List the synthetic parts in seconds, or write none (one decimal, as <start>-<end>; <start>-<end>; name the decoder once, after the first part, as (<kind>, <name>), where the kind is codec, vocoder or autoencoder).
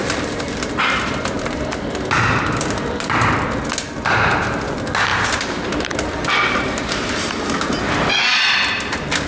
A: 0.0-1.3 (vocoder, BigVGAN v2); 5.1-7.8